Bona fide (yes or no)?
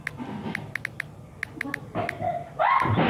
yes